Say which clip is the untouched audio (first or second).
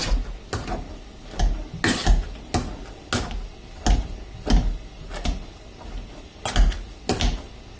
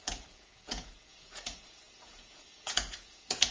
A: first